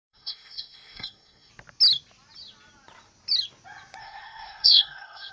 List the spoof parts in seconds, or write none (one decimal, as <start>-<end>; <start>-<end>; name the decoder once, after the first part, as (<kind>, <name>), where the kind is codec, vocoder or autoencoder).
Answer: 0.0-1.5 (codec, SNAC); 4.0-5.3